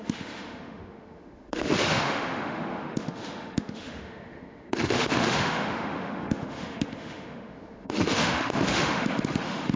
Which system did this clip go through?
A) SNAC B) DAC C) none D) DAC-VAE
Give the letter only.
D